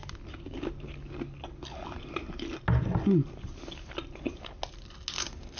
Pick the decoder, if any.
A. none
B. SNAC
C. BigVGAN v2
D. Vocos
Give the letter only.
A